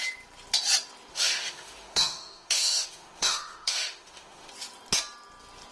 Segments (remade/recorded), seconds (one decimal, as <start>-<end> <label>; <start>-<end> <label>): 0.0-1.1 recorded; 1.1-4.5 remade; 4.5-5.7 recorded